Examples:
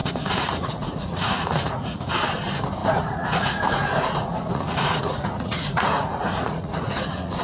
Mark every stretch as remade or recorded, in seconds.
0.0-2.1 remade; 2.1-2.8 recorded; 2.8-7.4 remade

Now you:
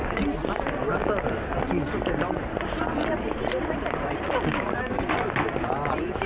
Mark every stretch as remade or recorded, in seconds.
0.0-6.3 recorded

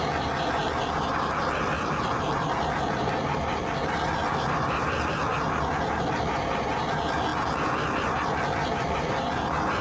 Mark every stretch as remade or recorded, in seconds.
0.0-9.8 recorded

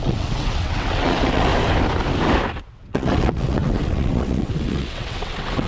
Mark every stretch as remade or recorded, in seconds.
0.0-1.5 remade; 1.5-2.7 recorded; 2.7-5.7 remade